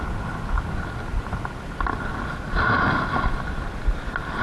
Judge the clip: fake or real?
real